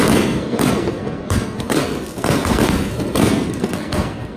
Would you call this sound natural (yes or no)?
no